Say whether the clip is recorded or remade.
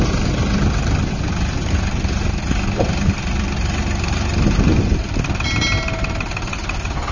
recorded